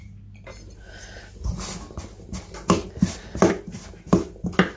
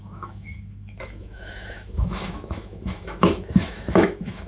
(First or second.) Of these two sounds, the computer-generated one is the second